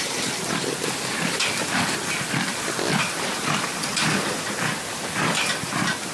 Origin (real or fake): real